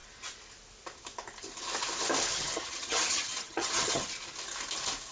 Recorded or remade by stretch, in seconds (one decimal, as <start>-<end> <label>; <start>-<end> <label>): 0.0-2.3 recorded; 2.3-4.1 remade; 4.1-5.1 recorded